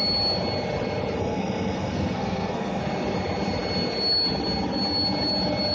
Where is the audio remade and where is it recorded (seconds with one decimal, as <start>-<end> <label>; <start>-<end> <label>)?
0.0-1.2 recorded; 1.2-2.8 remade; 2.8-5.7 recorded